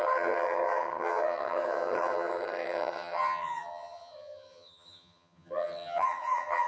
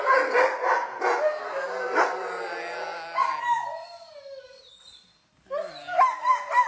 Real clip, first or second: second